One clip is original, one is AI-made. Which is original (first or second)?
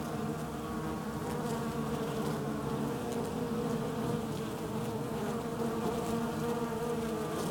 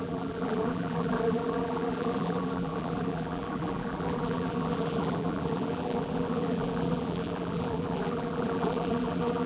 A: first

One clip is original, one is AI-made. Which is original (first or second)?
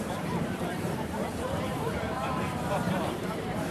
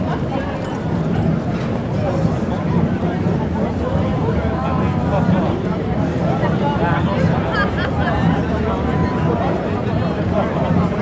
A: second